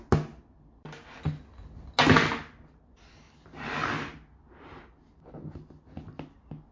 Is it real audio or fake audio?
real